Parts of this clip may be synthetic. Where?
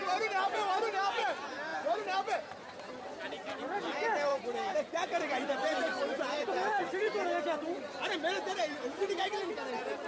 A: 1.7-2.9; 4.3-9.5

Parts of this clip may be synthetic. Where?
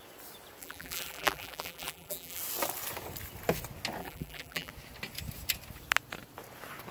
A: 0.6-2.4; 4.0-4.7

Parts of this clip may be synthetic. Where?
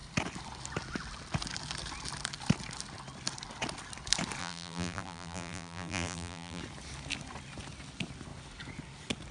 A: 4.4-6.6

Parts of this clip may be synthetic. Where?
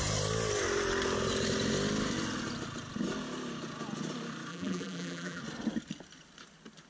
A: 4.5-5.4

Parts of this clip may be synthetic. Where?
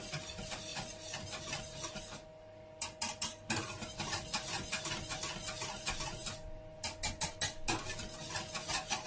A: none